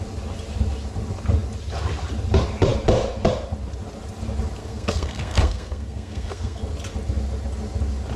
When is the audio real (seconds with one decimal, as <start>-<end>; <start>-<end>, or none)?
0.0-4.6; 6.6-8.2